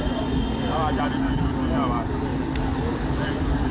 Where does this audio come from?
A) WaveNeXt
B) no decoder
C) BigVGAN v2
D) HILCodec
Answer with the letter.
B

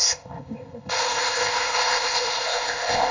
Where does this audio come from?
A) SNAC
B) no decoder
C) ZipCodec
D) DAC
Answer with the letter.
C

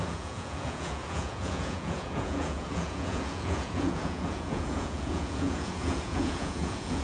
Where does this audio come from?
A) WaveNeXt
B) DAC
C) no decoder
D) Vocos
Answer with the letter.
D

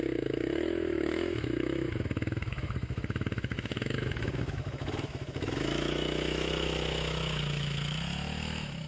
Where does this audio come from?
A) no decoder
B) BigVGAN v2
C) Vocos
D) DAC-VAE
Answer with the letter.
D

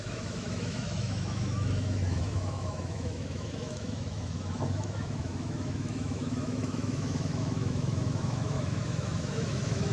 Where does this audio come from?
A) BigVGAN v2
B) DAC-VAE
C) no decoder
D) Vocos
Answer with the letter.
B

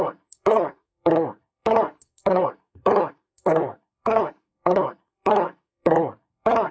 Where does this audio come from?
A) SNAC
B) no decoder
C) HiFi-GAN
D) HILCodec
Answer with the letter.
A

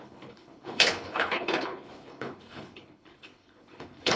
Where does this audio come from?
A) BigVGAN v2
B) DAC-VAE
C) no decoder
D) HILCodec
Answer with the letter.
D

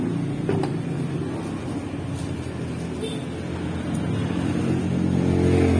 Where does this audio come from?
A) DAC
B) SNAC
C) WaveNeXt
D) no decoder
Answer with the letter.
D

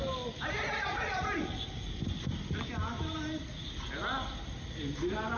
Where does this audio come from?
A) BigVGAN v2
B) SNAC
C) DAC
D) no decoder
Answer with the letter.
D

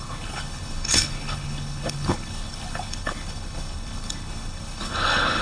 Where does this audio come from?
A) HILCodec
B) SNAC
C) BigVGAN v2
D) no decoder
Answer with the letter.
A